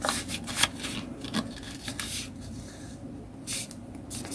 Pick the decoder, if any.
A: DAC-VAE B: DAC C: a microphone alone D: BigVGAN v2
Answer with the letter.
C